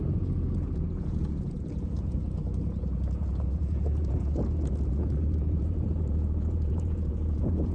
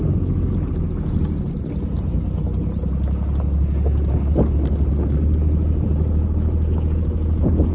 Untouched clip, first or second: second